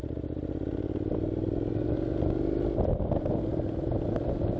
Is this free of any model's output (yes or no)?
yes